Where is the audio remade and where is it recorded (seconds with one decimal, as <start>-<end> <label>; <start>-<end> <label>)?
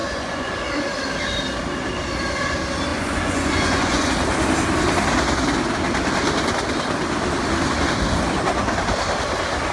0.0-0.5 remade; 0.5-2.9 recorded; 2.9-4.1 remade; 4.1-9.7 recorded